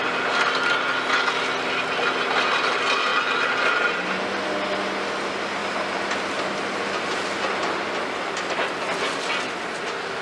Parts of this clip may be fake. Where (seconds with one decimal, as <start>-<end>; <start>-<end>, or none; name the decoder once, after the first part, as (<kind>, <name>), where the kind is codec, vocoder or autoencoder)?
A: none